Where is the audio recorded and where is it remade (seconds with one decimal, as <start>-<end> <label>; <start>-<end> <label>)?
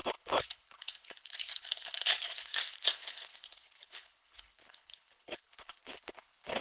0.0-6.6 remade